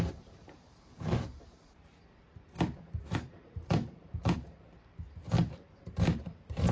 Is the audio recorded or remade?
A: remade